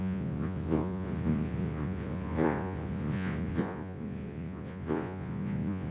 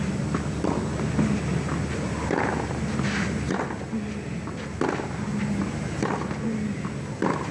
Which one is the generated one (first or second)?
first